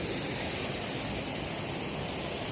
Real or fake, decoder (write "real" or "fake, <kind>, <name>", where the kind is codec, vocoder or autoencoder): real